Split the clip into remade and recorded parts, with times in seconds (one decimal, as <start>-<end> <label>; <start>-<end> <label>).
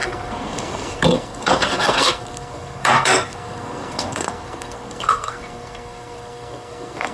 0.0-7.1 remade